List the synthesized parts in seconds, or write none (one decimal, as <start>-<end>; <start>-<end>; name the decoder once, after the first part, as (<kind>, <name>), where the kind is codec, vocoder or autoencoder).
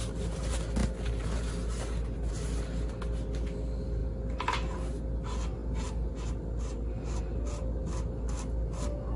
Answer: none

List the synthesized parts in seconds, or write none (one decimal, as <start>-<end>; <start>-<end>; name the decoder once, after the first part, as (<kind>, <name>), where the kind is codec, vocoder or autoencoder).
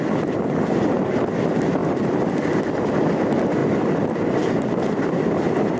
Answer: 3.6-4.2 (vocoder, BigVGAN v2)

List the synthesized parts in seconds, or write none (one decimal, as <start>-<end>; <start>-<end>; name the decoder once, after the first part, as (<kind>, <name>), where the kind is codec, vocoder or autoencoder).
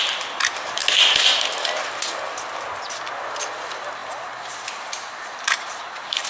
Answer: 0.0-0.8 (vocoder, BigVGAN v2); 3.4-6.3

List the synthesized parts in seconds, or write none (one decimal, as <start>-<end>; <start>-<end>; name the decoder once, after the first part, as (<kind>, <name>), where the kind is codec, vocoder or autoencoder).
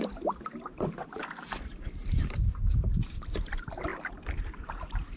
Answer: 1.7-2.6 (vocoder, BigVGAN v2); 3.9-5.2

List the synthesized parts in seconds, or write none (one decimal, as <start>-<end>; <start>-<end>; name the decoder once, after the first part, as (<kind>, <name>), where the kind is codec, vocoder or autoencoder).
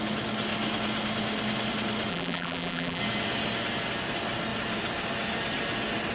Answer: 2.1-3.0 (vocoder, BigVGAN v2)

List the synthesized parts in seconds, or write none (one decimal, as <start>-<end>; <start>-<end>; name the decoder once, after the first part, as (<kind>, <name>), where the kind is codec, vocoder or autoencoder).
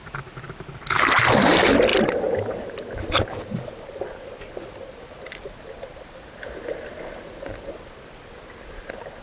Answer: none